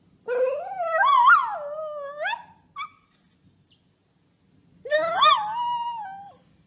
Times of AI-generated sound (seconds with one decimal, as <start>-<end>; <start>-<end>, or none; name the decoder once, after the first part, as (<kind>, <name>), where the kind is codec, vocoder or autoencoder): none